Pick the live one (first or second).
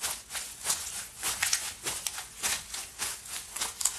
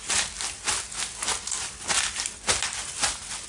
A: second